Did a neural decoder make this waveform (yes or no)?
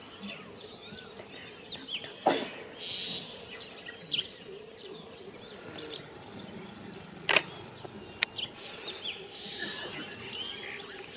no